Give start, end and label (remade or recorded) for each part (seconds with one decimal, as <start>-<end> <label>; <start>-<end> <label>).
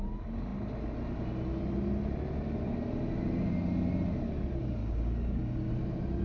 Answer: 0.0-4.8 recorded; 4.8-5.7 remade; 5.7-6.2 recorded